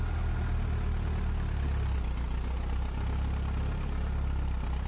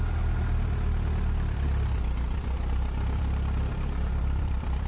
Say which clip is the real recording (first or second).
first